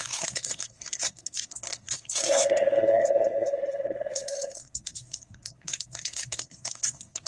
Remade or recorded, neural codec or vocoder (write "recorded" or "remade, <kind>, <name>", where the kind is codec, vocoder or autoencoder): remade, codec, SNAC